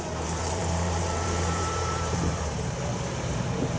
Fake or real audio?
fake